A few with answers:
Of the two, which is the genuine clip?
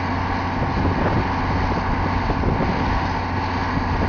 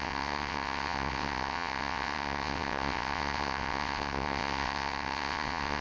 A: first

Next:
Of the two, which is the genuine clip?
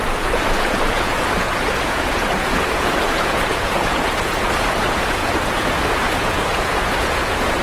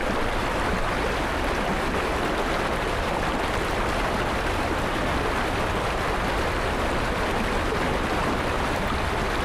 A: second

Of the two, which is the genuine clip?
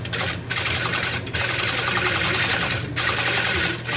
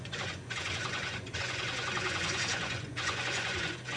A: first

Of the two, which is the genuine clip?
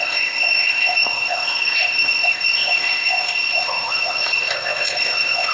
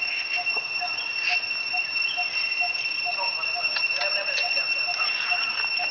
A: second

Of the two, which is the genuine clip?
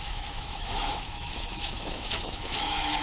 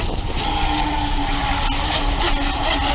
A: second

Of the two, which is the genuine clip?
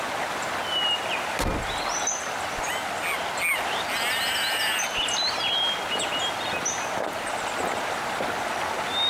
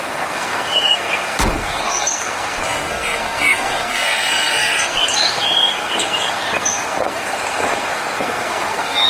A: first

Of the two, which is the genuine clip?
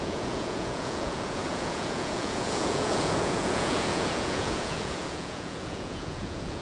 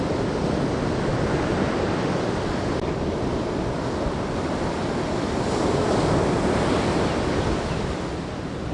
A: second